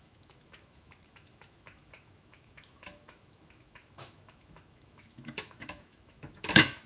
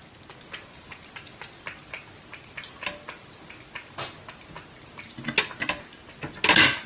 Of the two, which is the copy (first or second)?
first